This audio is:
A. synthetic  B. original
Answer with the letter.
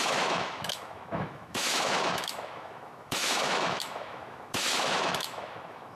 A